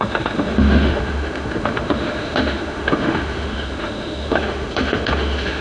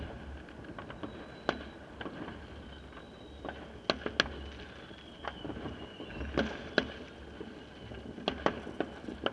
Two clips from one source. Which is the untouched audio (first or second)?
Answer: second